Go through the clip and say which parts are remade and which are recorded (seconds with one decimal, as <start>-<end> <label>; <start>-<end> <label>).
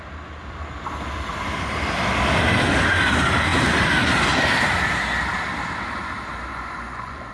0.0-6.5 recorded; 6.5-7.3 remade